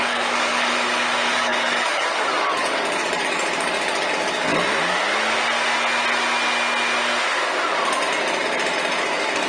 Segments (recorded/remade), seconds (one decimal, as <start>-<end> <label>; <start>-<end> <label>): 0.0-4.5 remade; 4.5-9.0 recorded; 9.0-9.5 remade